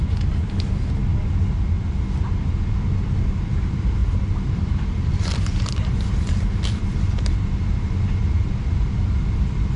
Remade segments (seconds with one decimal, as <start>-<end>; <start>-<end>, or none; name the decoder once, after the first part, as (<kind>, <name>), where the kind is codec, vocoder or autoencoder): 4.0-6.9 (vocoder, BigVGAN v2)